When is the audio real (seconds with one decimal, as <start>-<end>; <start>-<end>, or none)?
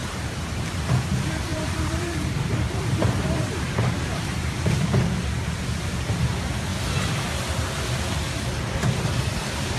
0.0-1.5; 4.7-9.8